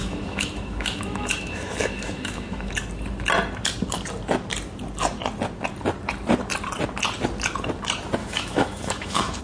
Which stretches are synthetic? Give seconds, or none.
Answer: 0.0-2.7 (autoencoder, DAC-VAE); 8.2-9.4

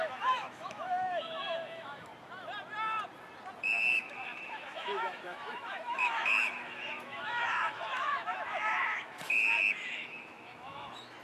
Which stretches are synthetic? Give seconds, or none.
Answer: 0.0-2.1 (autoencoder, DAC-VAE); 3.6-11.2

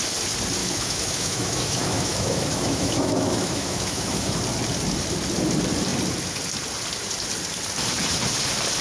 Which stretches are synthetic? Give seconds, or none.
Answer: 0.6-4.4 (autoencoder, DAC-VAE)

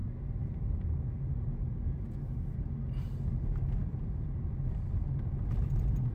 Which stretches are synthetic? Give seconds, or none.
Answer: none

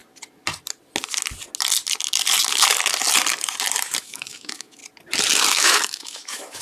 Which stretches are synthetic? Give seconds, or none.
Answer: 4.0-4.8 (autoencoder, DAC-VAE); 5.5-6.6